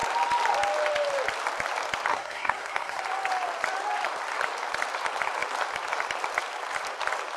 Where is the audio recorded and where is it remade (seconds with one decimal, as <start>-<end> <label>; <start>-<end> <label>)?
0.0-2.1 recorded; 2.1-3.0 remade; 3.0-7.4 recorded